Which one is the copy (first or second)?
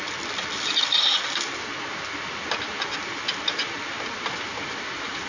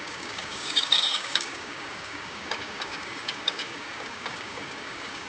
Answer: second